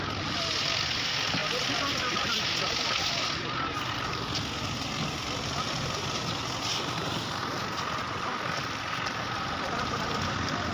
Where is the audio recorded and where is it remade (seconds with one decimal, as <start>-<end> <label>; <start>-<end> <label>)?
0.0-10.7 recorded